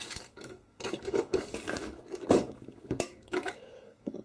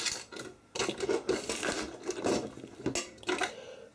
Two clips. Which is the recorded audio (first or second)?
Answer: second